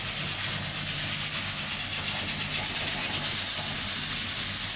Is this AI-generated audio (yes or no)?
no